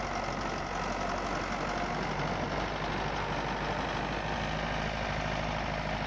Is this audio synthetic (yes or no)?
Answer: no